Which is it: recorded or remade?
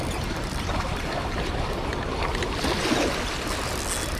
recorded